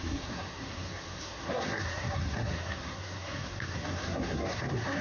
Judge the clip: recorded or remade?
remade